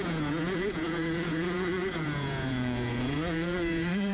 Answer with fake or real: fake